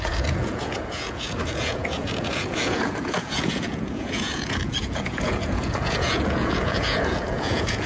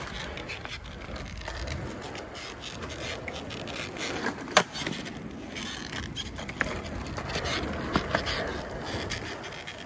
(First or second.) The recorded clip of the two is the second